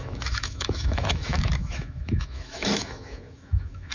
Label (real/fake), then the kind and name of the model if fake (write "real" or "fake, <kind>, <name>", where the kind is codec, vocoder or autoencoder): fake, autoencoder, DAC-VAE